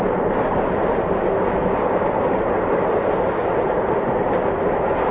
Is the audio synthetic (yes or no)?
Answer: no